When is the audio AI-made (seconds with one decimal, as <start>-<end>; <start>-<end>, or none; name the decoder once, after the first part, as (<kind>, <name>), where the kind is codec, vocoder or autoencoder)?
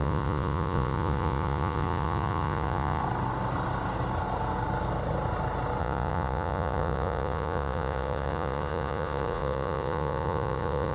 0.0-3.0 (vocoder, Vocos); 5.8-10.9